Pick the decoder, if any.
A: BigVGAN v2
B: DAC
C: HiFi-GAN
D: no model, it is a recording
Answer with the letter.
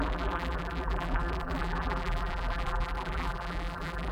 A